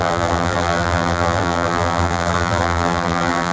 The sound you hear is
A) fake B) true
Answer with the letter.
A